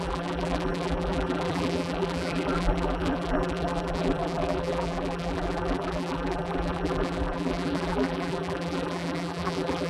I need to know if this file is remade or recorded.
remade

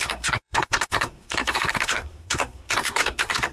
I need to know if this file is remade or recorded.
remade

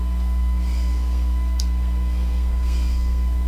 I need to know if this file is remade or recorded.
remade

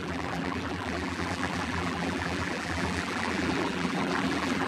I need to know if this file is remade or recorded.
remade